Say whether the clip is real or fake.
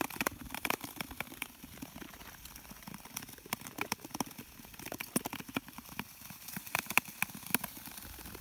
real